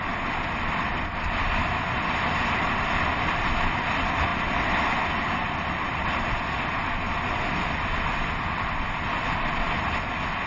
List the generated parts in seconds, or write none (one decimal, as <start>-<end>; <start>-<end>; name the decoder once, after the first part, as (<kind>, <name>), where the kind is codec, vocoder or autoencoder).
none

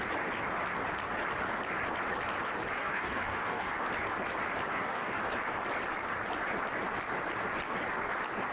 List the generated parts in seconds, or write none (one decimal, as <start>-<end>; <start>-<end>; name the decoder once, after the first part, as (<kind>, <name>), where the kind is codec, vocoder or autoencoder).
2.8-3.7 (codec, DAC); 4.7-5.2

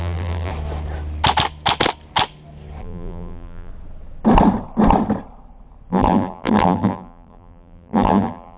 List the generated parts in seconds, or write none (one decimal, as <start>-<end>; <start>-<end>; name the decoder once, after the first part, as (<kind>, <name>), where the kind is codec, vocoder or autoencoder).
0.0-0.5 (vocoder, BigVGAN v2); 2.8-3.7; 5.9-8.6

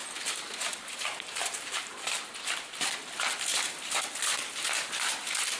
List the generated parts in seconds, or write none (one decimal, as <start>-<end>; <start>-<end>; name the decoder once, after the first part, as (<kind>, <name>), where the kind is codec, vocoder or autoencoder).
0.0-2.2 (vocoder, BigVGAN v2)

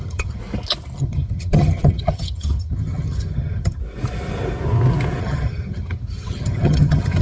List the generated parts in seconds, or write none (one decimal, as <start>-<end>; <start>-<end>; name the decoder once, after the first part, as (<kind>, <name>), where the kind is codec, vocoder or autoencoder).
0.0-0.4 (vocoder, HiFi-GAN); 1.0-3.8; 5.2-7.2

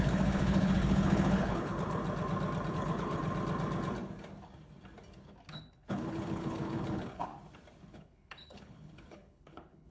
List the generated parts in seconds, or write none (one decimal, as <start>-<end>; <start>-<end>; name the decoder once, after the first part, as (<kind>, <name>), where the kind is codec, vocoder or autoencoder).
0.0-2.0 (codec, HILCodec); 2.7-3.2; 5.5-7.3; 7.9-9.9

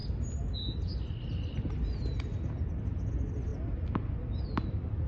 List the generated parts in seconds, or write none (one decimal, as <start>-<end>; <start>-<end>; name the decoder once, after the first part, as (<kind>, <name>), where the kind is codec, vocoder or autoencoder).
none

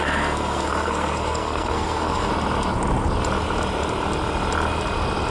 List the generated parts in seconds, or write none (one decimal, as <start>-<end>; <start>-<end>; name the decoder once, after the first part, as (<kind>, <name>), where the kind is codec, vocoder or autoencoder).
0.0-2.3 (codec, SNAC)